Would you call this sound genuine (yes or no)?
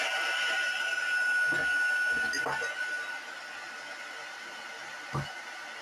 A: yes